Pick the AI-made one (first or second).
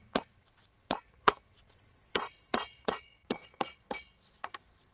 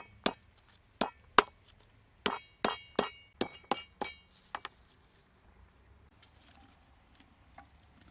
first